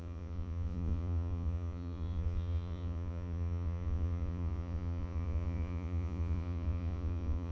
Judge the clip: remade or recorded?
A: remade